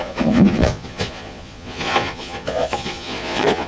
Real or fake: fake